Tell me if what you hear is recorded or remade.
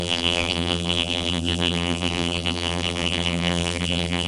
remade